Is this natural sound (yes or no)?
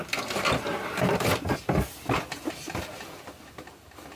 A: yes